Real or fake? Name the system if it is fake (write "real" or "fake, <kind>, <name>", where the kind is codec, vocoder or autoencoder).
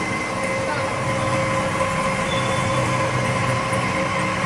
real